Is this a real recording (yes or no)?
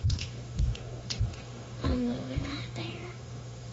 no